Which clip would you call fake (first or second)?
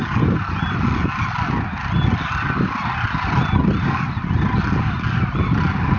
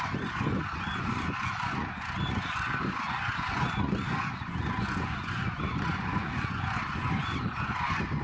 second